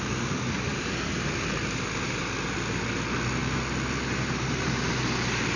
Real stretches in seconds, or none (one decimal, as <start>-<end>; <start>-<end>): 0.0-5.6